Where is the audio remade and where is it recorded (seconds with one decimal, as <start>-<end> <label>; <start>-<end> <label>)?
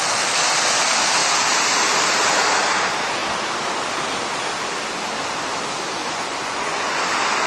0.0-6.0 recorded; 6.0-7.0 remade; 7.0-7.5 recorded